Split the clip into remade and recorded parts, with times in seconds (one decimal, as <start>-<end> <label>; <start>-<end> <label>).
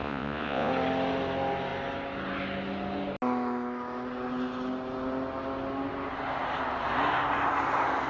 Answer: 0.0-0.7 remade; 0.7-8.1 recorded